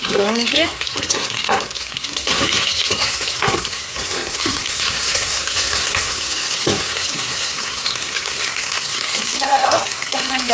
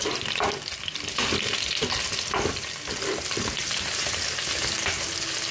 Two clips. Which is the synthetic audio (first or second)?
first